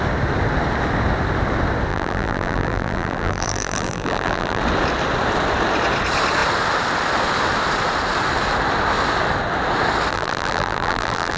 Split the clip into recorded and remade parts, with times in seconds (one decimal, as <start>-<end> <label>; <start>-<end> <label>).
0.0-1.9 recorded; 1.9-4.6 remade; 4.6-10.1 recorded; 10.1-11.4 remade